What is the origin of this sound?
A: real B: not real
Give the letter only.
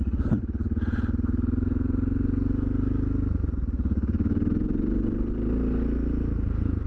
A